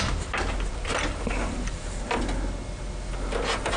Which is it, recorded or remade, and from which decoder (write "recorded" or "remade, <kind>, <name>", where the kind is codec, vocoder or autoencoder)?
recorded